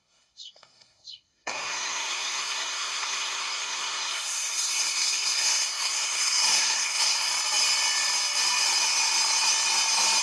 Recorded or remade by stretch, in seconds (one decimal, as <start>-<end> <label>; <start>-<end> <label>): 0.0-7.3 remade; 7.3-10.2 recorded